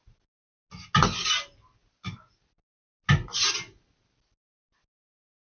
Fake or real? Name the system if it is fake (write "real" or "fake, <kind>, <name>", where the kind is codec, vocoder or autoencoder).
real